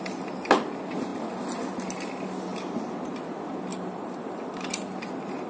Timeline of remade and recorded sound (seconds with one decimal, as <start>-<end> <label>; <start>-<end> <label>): 0.0-3.7 recorded; 3.7-4.4 remade; 4.4-5.5 recorded